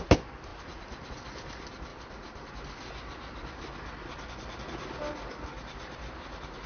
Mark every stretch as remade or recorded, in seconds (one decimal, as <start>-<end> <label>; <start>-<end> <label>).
0.0-1.9 recorded; 1.9-2.5 remade; 2.5-6.7 recorded